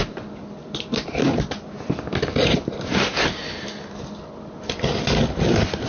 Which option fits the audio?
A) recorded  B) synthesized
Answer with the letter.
A